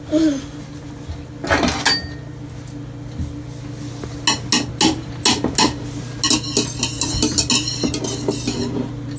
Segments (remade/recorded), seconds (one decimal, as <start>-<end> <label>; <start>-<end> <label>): 0.0-9.2 recorded

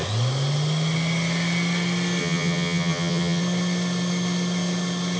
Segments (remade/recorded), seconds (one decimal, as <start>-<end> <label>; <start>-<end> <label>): 0.0-2.2 recorded; 2.2-3.4 remade; 3.4-5.2 recorded

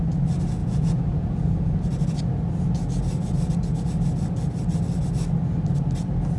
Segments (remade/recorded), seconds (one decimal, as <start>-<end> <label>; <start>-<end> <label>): 0.0-0.6 recorded; 0.6-1.8 remade; 1.8-6.4 recorded

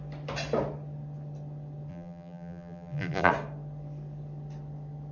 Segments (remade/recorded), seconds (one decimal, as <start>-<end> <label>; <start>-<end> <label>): 0.0-1.9 recorded; 1.9-3.3 remade; 3.3-5.1 recorded

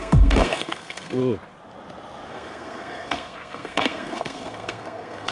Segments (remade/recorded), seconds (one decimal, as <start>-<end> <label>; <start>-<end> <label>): 0.0-1.2 remade; 1.2-2.3 recorded; 2.3-5.3 remade

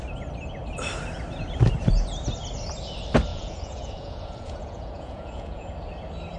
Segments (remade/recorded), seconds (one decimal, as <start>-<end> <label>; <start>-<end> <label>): 0.0-3.3 recorded; 3.3-5.7 remade; 5.7-6.4 recorded